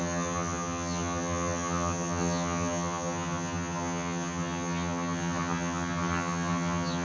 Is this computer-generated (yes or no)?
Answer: yes